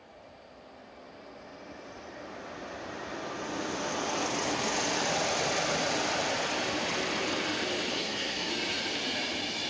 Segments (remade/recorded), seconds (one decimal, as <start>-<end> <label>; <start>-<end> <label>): 0.0-7.9 recorded; 7.9-8.5 remade; 8.5-9.7 recorded